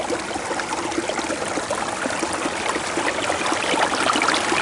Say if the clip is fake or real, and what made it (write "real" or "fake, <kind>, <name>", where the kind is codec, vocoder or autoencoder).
real